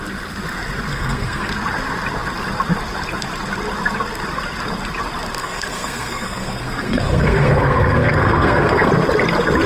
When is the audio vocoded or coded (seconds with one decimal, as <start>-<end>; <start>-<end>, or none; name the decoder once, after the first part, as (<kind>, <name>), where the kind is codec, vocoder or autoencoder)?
0.9-1.5 (codec, SNAC); 5.4-8.9